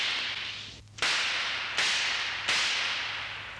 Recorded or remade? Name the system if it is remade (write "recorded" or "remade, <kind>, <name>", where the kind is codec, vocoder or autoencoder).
recorded